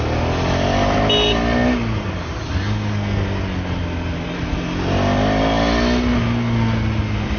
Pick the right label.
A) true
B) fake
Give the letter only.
A